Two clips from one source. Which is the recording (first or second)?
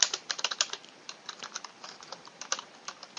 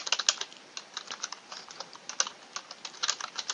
second